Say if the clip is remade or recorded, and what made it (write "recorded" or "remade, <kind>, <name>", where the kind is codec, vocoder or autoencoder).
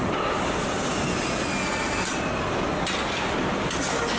recorded